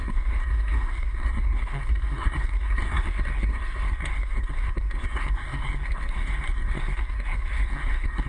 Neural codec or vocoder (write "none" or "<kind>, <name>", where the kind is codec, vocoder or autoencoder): codec, SNAC